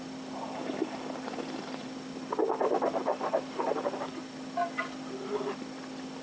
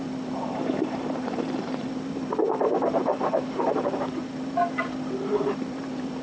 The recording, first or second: first